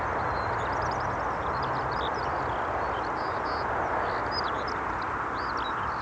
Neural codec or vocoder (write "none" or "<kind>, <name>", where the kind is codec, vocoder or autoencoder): none